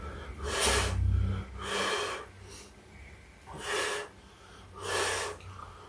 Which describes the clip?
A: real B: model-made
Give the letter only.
A